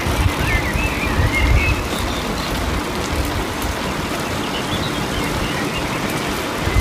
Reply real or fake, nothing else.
real